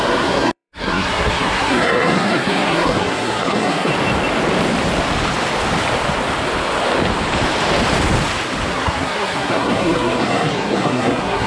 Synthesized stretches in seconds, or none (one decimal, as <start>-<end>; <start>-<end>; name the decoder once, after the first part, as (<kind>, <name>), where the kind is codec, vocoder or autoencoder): 0.0-3.9 (codec, SNAC); 8.7-11.5